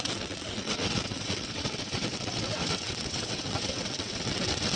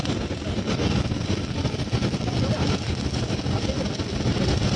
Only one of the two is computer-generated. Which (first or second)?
first